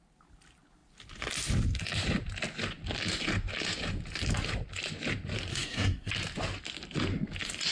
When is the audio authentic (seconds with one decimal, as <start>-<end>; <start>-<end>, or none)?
0.0-5.5; 6.1-7.7